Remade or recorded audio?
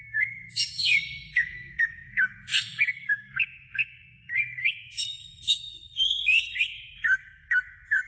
remade